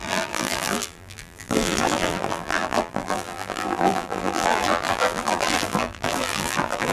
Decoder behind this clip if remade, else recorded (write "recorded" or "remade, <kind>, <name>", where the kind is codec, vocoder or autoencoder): remade, vocoder, BigVGAN v2